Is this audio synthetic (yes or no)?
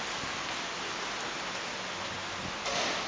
no